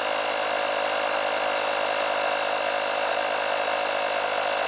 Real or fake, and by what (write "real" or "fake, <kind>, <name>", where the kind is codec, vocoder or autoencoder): real